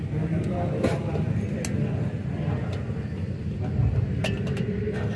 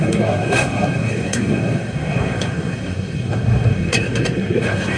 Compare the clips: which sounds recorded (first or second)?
first